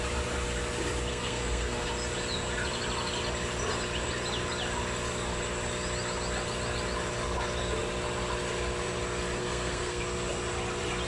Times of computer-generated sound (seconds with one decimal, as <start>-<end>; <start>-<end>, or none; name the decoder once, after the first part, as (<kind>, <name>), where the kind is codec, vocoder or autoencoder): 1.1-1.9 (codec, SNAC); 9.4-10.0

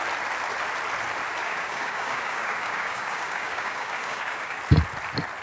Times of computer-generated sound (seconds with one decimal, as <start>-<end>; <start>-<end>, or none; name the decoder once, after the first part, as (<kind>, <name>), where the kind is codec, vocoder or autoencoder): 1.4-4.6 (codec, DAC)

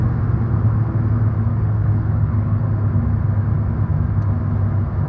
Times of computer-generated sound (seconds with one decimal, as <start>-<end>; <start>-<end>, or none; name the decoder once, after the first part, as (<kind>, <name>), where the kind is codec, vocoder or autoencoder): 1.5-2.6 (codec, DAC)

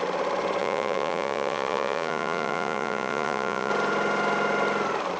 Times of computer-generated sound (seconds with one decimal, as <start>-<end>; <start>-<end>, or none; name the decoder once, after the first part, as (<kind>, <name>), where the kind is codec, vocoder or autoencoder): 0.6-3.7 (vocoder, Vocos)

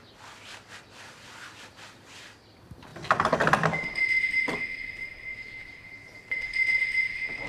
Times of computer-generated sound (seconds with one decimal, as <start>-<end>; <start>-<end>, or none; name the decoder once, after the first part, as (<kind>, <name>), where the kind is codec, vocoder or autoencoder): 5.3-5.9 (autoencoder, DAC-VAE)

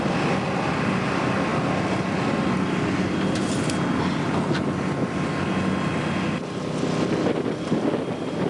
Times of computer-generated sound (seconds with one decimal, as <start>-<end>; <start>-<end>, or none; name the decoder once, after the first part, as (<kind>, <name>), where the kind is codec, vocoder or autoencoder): none

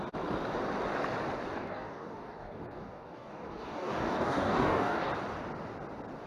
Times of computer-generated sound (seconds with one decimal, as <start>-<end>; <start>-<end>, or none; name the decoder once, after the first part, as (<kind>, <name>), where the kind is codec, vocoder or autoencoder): 1.5-5.1 (codec, DAC)